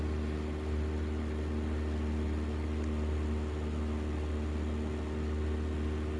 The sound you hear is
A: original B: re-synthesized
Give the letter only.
A